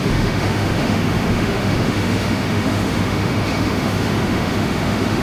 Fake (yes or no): yes